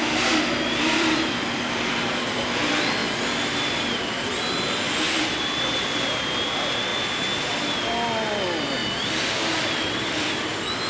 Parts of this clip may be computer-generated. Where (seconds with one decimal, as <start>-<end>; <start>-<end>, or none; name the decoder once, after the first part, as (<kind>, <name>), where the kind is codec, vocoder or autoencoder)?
0.0-3.0 (vocoder, BigVGAN v2); 4.1-6.9; 8.4-10.9